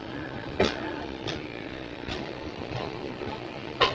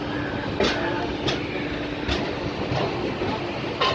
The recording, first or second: second